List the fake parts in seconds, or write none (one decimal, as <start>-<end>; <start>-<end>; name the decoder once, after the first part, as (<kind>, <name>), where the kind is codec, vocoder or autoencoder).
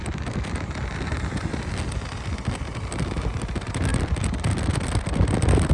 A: 2.7-3.4 (vocoder, BigVGAN v2); 3.9-5.7